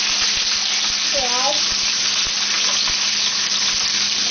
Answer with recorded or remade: recorded